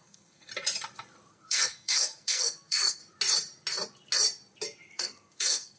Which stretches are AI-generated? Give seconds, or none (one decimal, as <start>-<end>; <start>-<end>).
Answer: 0.0-0.5; 1.3-3.0; 4.9-5.8